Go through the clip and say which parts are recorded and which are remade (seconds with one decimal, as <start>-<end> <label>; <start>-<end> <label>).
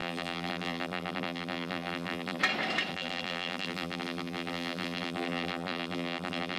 0.0-2.4 remade; 2.4-2.9 recorded; 2.9-6.6 remade